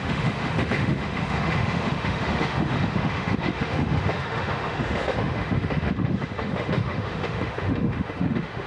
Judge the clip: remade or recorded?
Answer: remade